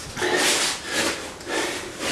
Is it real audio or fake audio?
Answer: real